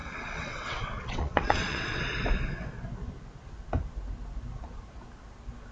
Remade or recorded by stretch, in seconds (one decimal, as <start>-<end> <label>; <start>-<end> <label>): 0.0-2.0 remade; 2.0-5.7 recorded